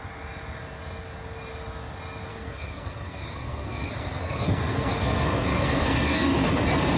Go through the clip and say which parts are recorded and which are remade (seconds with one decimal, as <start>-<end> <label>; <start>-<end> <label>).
0.0-2.3 recorded; 2.3-6.5 remade; 6.5-7.0 recorded